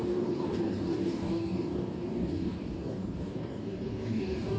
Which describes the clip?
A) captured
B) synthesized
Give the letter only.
B